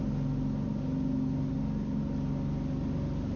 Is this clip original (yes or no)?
yes